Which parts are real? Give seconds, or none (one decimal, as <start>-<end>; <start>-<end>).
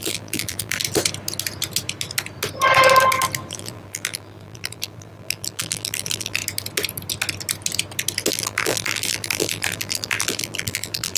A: 0.8-3.5; 6.4-8.3